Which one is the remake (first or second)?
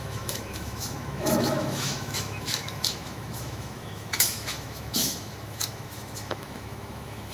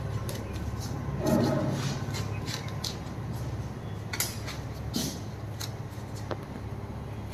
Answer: first